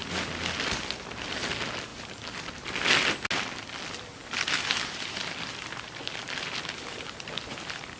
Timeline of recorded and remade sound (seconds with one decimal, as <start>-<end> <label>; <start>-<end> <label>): 0.0-4.2 recorded; 4.2-7.4 remade; 7.4-8.0 recorded